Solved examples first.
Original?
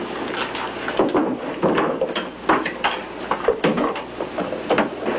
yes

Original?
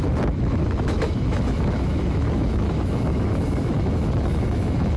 no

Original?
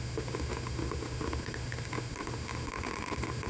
no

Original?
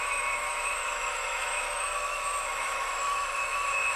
no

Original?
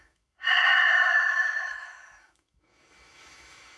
no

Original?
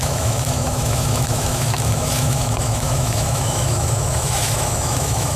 no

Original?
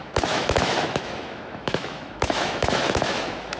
no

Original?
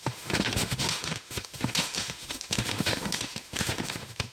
no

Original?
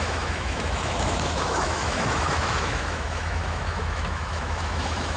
no